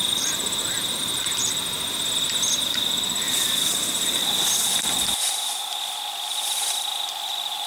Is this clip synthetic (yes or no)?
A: no